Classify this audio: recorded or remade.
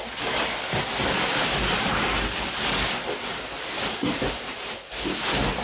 recorded